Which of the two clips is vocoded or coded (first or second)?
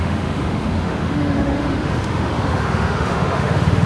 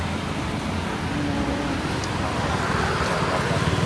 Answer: first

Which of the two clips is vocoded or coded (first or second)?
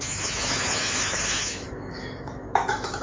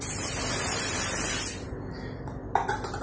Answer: first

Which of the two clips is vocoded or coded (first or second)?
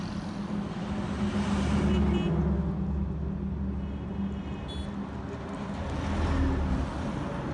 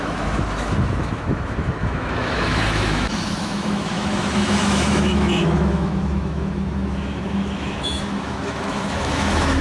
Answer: second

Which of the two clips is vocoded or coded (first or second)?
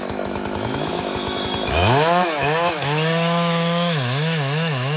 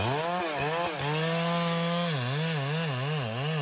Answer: first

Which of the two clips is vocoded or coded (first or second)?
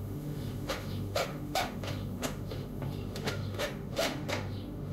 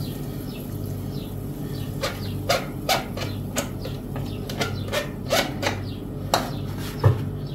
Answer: first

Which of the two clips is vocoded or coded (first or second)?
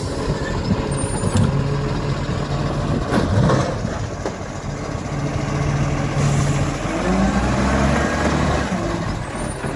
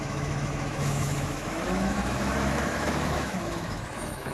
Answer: second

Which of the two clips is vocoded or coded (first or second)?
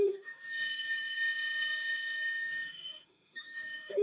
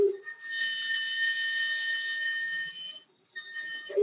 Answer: first